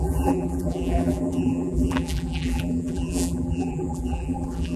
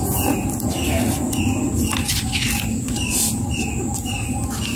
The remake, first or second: first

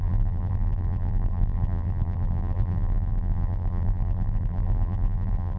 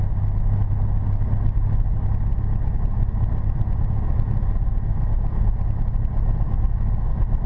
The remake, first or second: first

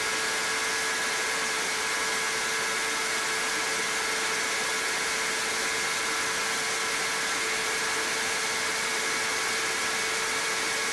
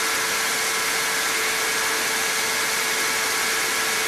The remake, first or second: second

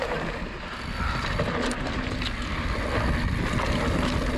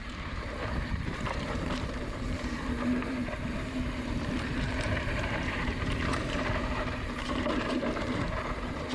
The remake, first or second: second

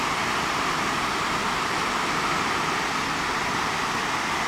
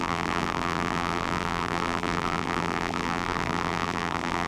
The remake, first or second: second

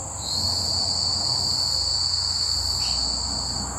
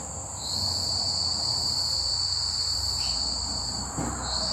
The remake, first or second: second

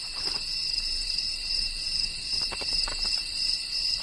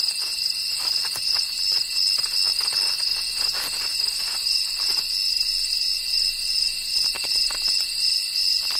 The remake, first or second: first